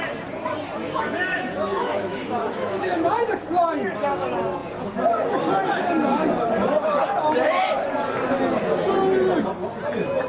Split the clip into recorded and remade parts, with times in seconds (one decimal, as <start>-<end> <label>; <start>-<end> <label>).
0.0-0.8 recorded; 0.8-3.1 remade; 3.1-10.3 recorded